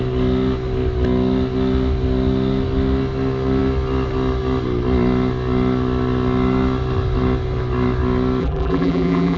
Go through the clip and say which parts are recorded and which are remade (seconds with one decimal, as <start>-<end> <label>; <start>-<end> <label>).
0.0-8.4 recorded; 8.4-9.4 remade

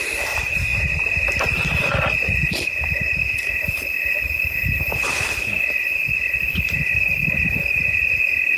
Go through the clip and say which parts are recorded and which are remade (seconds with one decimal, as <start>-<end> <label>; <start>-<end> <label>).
0.0-0.7 recorded; 0.7-1.4 remade; 1.4-5.1 recorded; 5.1-8.2 remade; 8.2-8.6 recorded

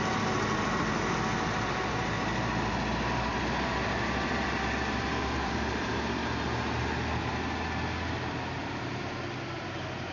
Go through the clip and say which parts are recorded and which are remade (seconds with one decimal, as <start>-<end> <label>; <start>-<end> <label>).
0.0-3.3 recorded; 3.3-5.9 remade; 5.9-8.6 recorded; 8.6-9.2 remade; 9.2-10.1 recorded

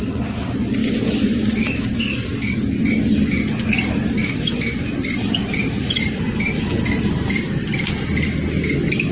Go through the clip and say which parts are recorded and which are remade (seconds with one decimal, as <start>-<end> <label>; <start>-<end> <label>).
0.0-0.8 recorded; 0.8-1.8 remade; 1.8-4.2 recorded; 4.2-8.1 remade; 8.1-9.1 recorded

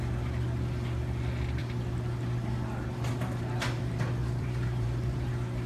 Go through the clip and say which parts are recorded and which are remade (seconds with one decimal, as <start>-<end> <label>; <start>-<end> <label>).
0.0-4.2 recorded; 4.2-5.7 remade

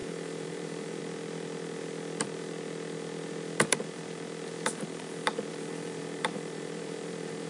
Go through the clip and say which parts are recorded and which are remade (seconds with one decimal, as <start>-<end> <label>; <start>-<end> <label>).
0.0-1.0 remade; 1.0-5.5 recorded; 5.5-7.5 remade